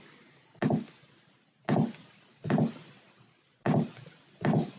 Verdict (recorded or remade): recorded